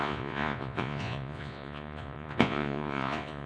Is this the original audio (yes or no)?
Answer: no